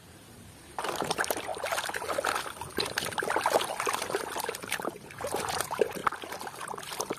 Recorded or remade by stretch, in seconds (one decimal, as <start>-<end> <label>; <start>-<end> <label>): 0.0-1.5 remade; 1.5-4.6 recorded; 4.6-6.0 remade; 6.0-7.2 recorded